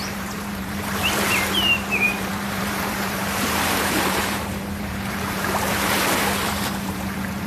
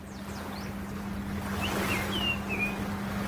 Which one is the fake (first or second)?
first